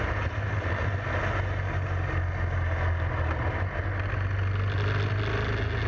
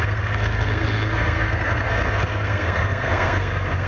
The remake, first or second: second